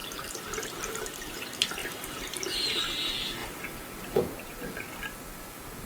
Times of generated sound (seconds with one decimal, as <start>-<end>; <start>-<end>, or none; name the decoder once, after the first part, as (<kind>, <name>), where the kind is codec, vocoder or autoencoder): 0.0-1.0 (vocoder, BigVGAN v2); 1.8-2.8